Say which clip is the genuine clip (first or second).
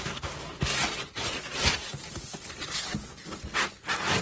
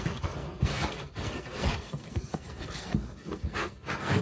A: first